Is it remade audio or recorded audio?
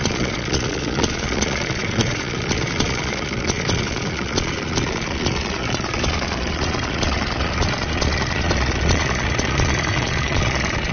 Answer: remade